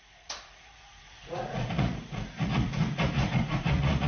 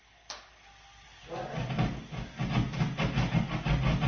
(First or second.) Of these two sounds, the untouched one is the second